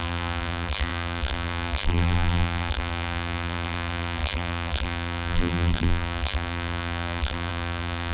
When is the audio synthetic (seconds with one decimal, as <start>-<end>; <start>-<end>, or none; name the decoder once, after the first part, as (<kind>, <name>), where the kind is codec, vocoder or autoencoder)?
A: 0.0-8.1 (vocoder, BigVGAN v2)